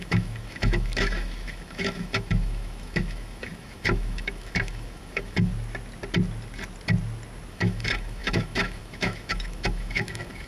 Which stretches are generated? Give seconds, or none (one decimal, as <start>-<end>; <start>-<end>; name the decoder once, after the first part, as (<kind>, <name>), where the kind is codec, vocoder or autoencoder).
0.0-5.5 (autoencoder, DAC-VAE); 7.5-10.5